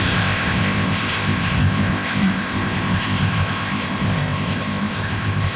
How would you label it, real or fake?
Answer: fake